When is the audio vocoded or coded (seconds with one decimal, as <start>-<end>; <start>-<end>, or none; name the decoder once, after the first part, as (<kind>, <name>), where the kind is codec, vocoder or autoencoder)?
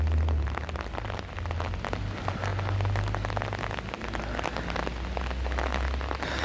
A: none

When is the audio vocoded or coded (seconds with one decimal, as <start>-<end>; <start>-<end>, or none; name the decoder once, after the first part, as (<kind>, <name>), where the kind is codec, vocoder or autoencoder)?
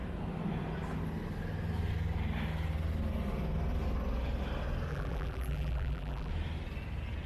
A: 4.9-6.3 (vocoder, BigVGAN v2)